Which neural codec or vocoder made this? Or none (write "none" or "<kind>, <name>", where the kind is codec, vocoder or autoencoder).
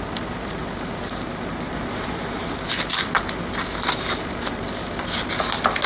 none